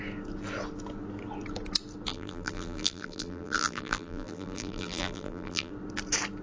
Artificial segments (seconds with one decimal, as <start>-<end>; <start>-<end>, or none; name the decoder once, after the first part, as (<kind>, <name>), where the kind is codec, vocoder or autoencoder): 2.1-5.7 (vocoder, BigVGAN v2)